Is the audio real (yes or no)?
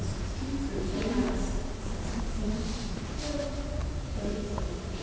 no